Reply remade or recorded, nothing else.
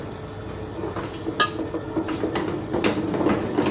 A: recorded